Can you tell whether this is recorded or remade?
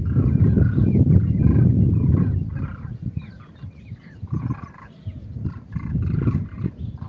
recorded